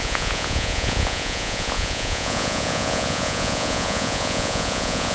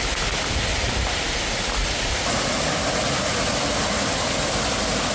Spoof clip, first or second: first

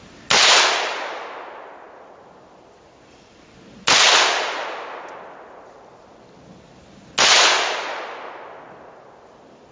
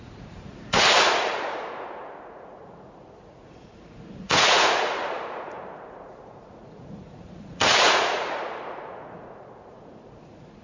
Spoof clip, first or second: second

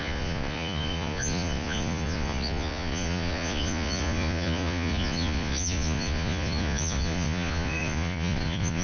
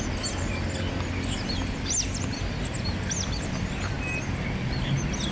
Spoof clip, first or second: first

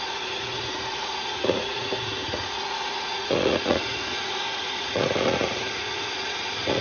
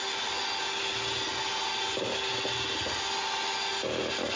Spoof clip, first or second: first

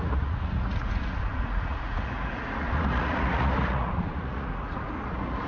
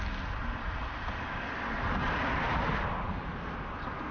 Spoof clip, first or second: first